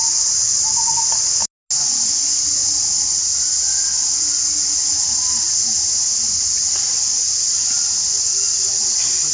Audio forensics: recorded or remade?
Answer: recorded